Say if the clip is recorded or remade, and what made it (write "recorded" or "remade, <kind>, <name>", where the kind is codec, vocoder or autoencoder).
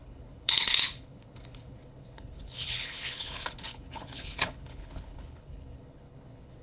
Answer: remade, codec, HILCodec